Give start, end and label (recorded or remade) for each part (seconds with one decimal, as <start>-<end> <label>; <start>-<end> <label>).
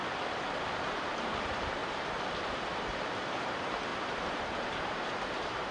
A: 0.0-0.7 recorded; 0.7-1.8 remade; 1.8-2.4 recorded; 2.4-5.7 remade